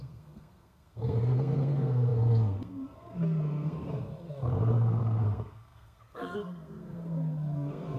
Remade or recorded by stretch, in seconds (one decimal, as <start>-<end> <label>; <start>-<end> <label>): 0.0-8.0 remade

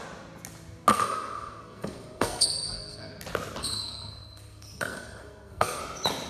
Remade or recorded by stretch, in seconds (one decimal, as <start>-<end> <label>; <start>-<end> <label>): 0.0-0.9 recorded; 0.9-3.1 remade; 3.1-3.6 recorded; 3.6-5.8 remade; 5.8-6.3 recorded

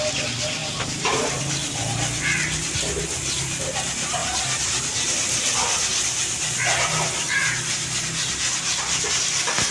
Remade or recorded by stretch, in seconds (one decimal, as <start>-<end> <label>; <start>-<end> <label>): 0.0-9.7 recorded

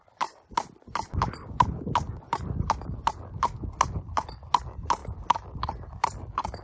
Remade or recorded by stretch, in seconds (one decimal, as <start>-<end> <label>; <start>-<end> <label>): 0.0-6.6 recorded

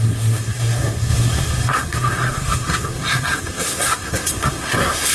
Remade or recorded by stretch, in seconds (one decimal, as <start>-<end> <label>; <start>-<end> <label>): 0.0-5.1 remade